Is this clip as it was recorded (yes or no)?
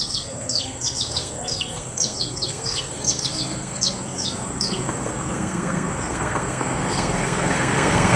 no